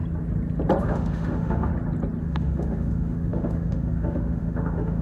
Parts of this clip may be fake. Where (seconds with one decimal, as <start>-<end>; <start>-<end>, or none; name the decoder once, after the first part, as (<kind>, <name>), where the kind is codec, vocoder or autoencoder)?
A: 0.8-1.7 (autoencoder, DAC-VAE); 2.2-5.0